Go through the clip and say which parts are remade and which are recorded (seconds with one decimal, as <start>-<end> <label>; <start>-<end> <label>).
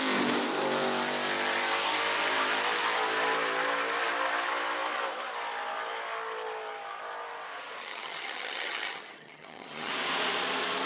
0.0-7.8 recorded; 7.8-9.9 remade; 9.9-10.9 recorded